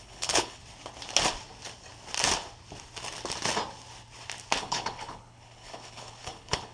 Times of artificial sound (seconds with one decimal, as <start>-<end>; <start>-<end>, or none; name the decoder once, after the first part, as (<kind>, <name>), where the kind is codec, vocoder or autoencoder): 0.0-0.6 (codec, HILCodec); 4.6-6.7